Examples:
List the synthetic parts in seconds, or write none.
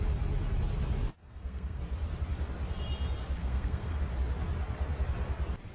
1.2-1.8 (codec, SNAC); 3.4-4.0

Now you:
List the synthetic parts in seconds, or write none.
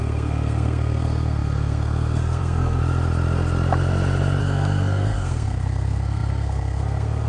0.0-2.8 (codec, SNAC); 4.4-7.3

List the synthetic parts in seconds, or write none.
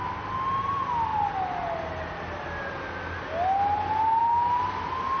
none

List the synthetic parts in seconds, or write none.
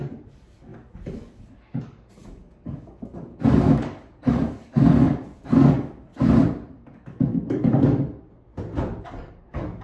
0.0-6.1 (codec, DAC); 6.7-8.5; 9.0-9.8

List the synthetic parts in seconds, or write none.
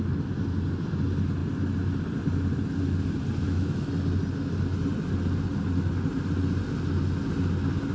3.4-3.9 (autoencoder, DAC-VAE)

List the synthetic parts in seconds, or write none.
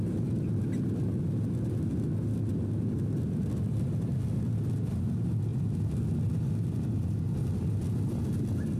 none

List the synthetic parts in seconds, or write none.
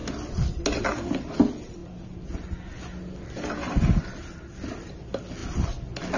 none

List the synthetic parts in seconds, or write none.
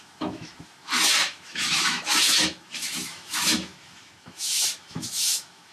0.0-5.7 (autoencoder, DAC-VAE)